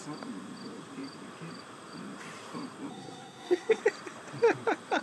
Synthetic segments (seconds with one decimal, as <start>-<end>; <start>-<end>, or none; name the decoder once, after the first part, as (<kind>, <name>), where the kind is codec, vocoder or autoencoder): 2.9-3.8 (codec, SNAC)

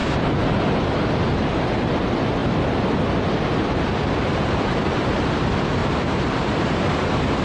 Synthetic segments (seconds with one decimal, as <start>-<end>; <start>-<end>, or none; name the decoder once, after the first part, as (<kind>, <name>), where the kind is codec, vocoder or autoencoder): 0.0-1.7 (vocoder, BigVGAN v2); 5.8-7.4

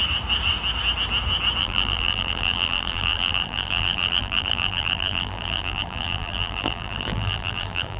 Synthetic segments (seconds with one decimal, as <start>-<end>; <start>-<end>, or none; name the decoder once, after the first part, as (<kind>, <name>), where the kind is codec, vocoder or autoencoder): 1.6-8.0 (vocoder, BigVGAN v2)

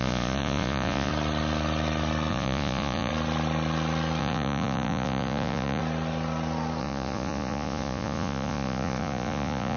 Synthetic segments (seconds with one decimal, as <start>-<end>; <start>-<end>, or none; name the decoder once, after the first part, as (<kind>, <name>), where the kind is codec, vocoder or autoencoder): 0.0-1.1 (vocoder, Vocos); 2.3-3.1; 4.2-5.8; 6.8-9.8

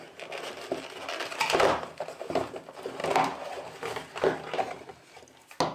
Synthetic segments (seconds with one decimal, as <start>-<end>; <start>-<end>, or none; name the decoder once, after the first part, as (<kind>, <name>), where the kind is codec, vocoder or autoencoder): none

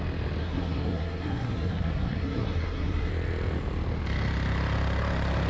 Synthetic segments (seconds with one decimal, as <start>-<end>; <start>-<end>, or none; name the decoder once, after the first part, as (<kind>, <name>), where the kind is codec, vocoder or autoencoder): 0.4-3.1 (codec, SNAC)